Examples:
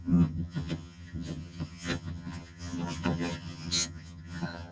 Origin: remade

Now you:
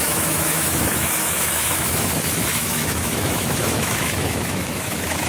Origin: remade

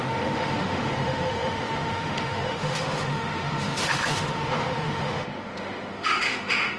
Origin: remade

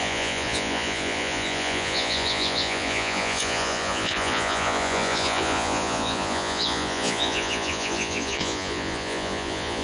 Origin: remade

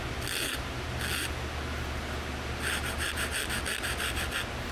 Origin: recorded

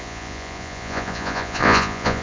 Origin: remade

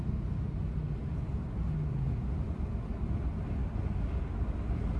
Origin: recorded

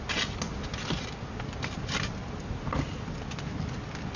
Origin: recorded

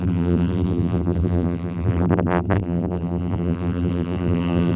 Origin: remade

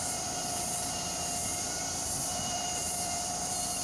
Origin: remade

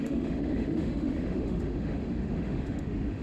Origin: remade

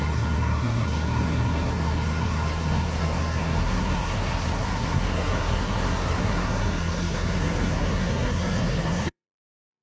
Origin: remade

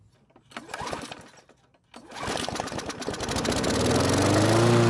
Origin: recorded